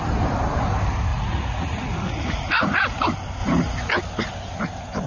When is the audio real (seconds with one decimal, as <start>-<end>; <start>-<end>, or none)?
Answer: 0.0-1.1; 3.0-3.4; 3.9-5.1